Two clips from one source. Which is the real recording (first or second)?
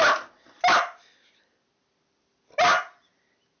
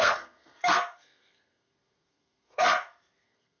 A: first